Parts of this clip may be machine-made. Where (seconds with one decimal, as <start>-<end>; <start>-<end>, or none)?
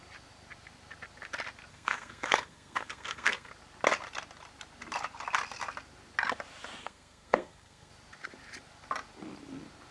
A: 1.7-3.5; 6.8-7.9